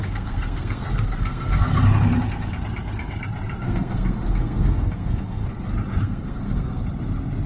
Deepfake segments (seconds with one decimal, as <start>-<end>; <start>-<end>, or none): 0.0-1.7; 3.6-5.4; 6.0-6.8